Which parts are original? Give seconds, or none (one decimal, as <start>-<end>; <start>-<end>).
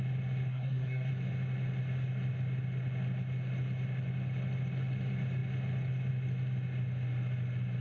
0.0-0.5; 1.1-7.8